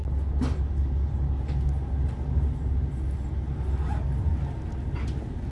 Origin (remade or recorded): recorded